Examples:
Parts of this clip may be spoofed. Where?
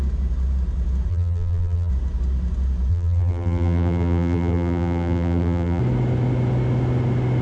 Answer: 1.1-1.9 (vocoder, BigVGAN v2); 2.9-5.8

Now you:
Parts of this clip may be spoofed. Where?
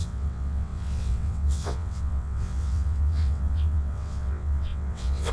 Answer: 0.0-5.3 (vocoder, WaveNeXt)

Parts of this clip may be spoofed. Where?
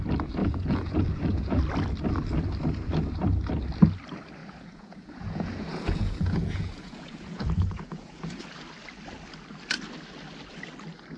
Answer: 0.4-1.6 (vocoder, Vocos); 4.4-8.4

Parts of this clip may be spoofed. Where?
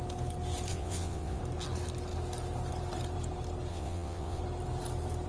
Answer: 0.7-1.4 (vocoder, WaveNeXt); 3.7-4.4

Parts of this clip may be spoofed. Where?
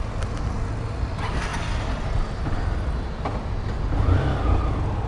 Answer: none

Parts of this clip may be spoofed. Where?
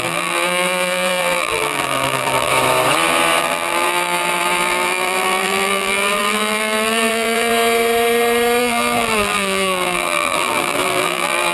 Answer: 0.0-2.5 (vocoder, BigVGAN v2); 3.4-7.5; 8.6-11.5